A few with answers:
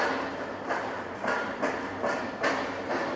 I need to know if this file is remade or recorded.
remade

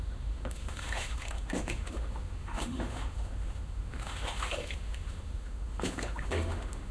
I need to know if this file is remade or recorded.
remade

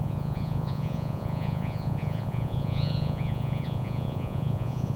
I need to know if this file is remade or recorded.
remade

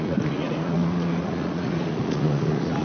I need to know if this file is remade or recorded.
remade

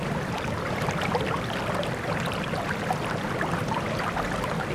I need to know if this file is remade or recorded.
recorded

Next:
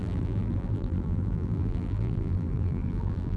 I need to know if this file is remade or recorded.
remade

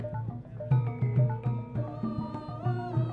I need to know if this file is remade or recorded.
recorded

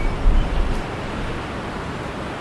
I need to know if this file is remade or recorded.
recorded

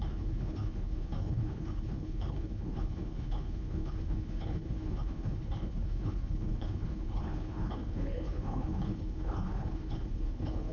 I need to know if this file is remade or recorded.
remade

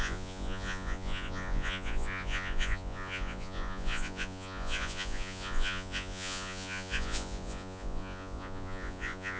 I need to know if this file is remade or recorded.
remade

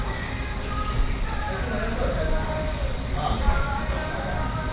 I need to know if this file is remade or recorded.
recorded